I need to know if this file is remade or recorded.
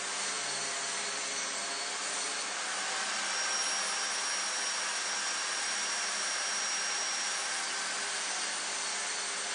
recorded